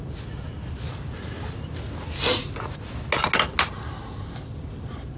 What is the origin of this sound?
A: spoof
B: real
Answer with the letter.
B